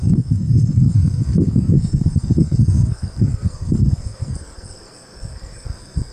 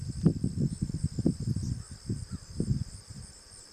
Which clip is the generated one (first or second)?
first